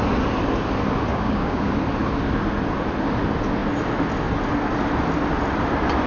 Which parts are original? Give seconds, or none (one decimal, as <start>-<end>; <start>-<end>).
0.0-1.1; 1.7-6.1